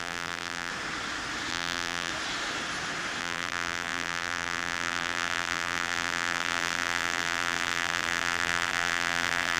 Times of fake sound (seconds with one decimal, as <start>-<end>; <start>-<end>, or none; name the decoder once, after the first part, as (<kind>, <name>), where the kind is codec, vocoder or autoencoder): 0.0-0.7 (vocoder, BigVGAN v2); 1.5-2.1; 3.2-9.6